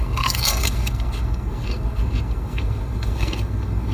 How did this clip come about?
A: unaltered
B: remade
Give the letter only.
B